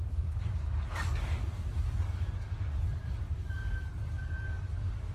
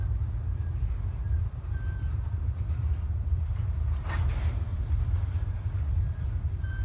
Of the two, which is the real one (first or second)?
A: second